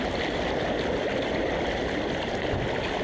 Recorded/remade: recorded